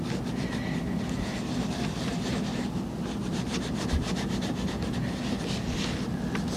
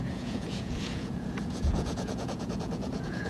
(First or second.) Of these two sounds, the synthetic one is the second